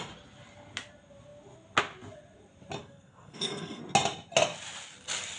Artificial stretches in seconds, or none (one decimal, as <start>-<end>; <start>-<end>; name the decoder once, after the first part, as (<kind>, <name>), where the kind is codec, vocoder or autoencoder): 2.8-3.8 (codec, SNAC)